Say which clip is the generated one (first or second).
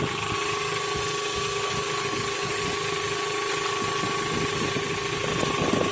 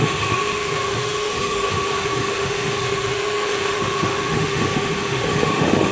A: second